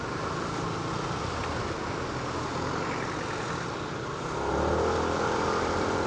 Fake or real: real